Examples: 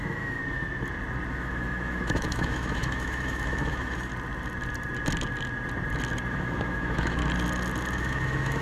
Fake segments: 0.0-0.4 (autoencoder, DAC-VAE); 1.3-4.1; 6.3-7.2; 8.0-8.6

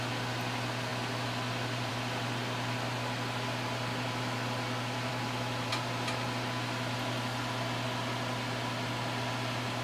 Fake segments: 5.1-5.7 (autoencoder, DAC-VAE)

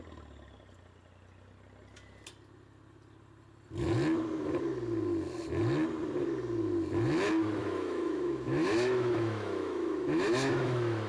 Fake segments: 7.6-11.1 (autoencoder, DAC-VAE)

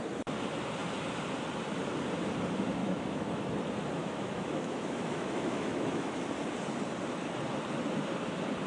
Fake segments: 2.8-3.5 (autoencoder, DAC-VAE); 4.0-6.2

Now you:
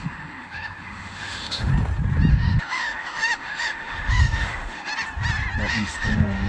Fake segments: 0.0-1.7 (autoencoder, DAC-VAE); 2.3-4.9; 5.7-6.5